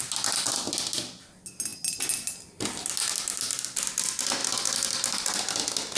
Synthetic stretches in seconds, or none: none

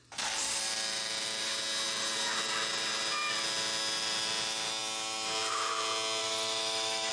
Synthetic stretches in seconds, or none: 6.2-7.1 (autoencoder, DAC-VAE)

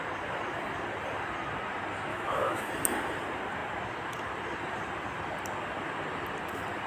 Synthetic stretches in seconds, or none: 2.1-2.7 (autoencoder, DAC-VAE)

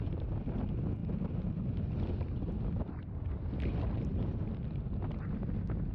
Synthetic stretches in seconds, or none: none